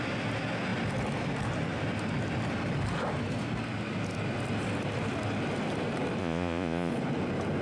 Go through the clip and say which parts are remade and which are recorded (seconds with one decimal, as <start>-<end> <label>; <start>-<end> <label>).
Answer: 0.0-6.2 recorded; 6.2-6.9 remade; 6.9-7.6 recorded